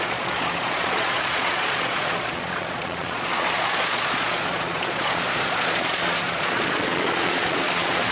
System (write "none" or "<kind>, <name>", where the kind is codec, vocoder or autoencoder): vocoder, Vocos